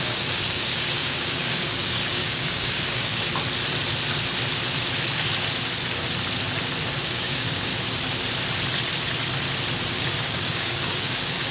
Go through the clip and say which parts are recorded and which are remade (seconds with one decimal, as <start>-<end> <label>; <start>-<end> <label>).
0.0-3.3 remade; 3.3-6.9 recorded; 6.9-7.7 remade; 7.7-9.9 recorded; 9.9-11.5 remade

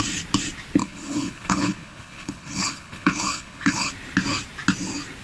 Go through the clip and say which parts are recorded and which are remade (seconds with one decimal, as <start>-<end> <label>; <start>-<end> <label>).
0.0-0.8 recorded; 0.8-3.9 remade; 3.9-5.2 recorded